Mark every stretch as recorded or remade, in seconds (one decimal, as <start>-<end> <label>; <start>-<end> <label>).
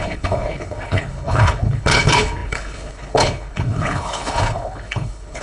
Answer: 0.0-5.4 remade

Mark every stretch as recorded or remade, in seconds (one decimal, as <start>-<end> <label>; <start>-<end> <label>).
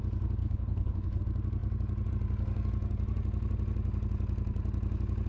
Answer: 0.0-0.4 recorded; 0.4-1.2 remade; 1.2-5.3 recorded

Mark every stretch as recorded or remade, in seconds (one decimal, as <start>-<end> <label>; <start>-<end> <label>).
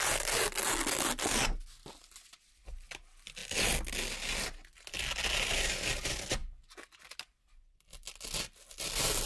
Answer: 0.0-9.3 recorded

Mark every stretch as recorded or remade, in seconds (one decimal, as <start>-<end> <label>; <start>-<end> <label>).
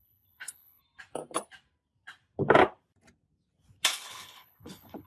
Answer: 0.0-0.8 remade; 0.8-3.9 recorded; 3.9-5.1 remade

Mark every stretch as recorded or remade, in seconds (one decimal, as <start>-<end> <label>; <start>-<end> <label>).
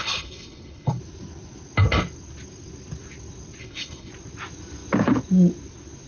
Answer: 0.0-1.0 remade; 1.0-3.6 recorded; 3.6-4.1 remade; 4.1-6.1 recorded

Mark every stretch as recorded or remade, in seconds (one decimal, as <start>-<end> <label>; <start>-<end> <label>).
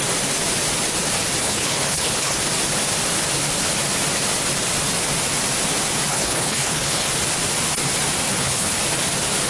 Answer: 0.0-1.4 recorded; 1.4-2.4 remade; 2.4-6.1 recorded; 6.1-7.1 remade; 7.1-8.3 recorded; 8.3-8.8 remade; 8.8-9.5 recorded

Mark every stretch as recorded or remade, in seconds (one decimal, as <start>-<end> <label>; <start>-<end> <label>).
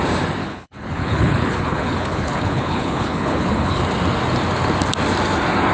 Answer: 0.0-0.4 recorded; 0.4-3.8 remade; 3.8-5.7 recorded